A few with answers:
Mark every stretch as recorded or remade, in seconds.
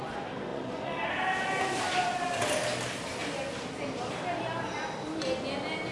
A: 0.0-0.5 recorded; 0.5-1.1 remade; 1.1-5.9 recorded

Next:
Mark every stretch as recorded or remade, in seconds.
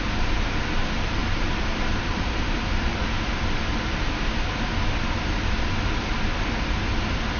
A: 0.0-1.2 recorded; 1.2-3.0 remade; 3.0-7.4 recorded